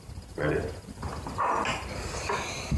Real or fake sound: real